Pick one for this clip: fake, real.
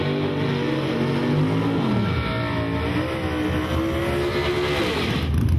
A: real